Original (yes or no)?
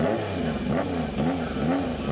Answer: yes